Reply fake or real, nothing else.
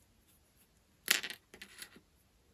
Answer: real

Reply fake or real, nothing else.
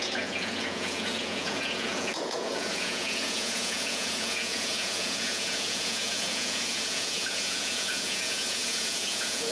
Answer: fake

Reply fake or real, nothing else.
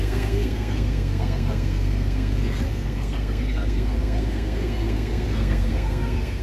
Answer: fake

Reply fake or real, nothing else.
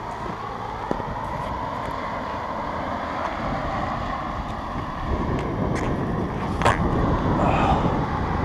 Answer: real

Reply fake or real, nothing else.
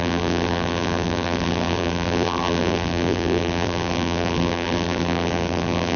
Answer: fake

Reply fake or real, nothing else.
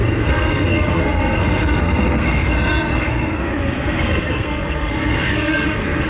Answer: fake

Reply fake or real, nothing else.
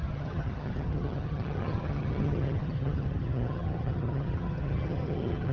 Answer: fake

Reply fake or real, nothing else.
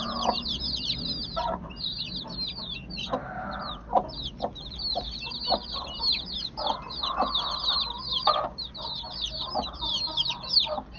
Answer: real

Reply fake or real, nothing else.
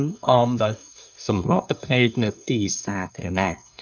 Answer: fake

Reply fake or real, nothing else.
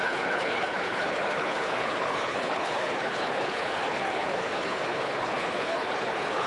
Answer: fake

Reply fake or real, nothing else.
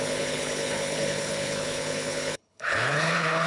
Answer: fake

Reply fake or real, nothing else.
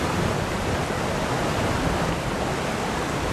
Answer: fake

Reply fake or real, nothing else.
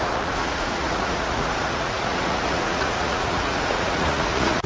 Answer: fake